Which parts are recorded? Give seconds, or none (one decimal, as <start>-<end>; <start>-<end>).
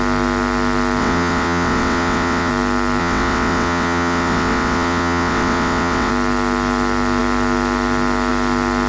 0.0-1.0; 2.5-3.0; 6.1-8.9